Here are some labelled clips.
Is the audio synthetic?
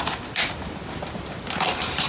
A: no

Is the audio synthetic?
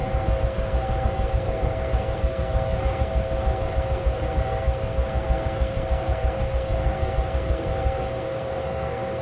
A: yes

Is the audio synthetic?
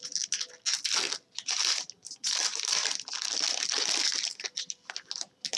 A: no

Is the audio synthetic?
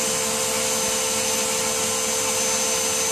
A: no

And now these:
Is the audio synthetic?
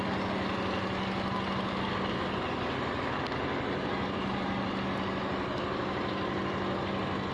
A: no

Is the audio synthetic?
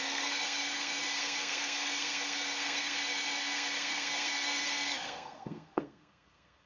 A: yes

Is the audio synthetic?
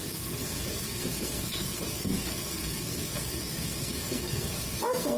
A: yes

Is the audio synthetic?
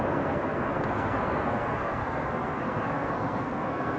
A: yes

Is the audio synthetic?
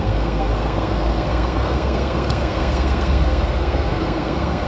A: yes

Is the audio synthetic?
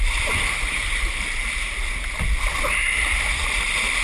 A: no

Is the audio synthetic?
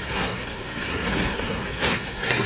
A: yes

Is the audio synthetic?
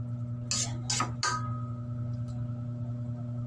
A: no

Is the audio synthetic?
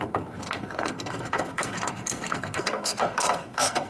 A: yes